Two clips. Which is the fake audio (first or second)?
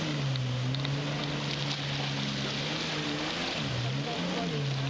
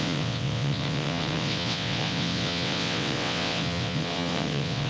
second